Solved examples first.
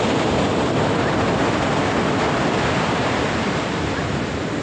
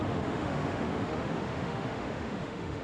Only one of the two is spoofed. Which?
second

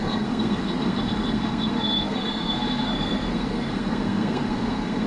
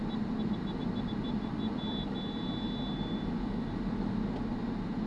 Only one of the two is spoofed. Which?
first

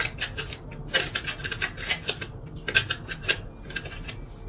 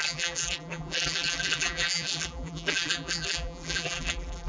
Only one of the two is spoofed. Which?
second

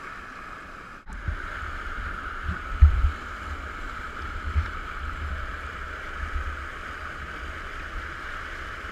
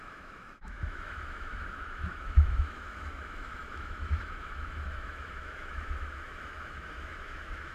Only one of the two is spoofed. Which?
second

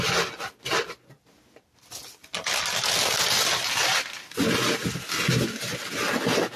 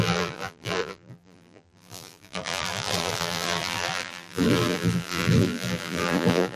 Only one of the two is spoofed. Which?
second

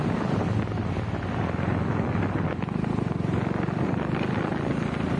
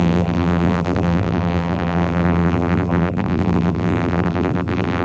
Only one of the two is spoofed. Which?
second